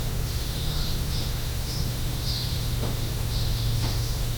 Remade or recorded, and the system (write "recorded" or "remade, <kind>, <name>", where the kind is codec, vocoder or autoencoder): remade, autoencoder, DAC-VAE